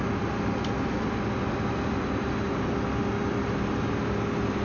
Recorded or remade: recorded